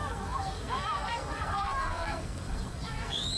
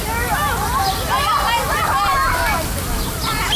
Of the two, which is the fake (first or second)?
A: first